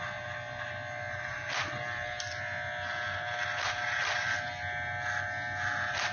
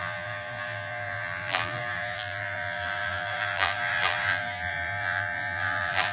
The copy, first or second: second